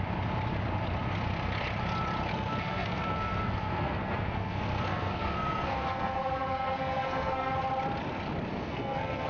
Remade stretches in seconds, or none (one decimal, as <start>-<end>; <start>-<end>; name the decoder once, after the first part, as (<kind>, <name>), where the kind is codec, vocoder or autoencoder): 2.3-7.5 (codec, SNAC); 8.6-9.3